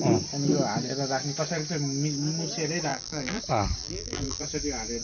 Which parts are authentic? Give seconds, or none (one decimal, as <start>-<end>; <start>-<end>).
0.0-2.9; 3.4-3.8; 4.4-5.0